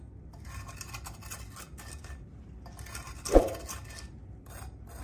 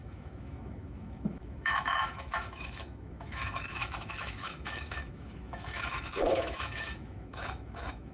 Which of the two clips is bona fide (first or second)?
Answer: first